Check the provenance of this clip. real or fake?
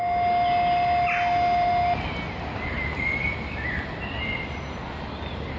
real